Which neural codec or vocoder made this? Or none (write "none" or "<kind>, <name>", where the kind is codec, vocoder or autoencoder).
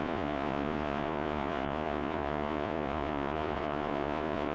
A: vocoder, Vocos